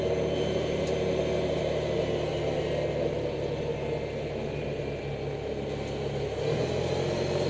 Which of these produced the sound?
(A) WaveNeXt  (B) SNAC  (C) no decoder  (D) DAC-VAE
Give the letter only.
C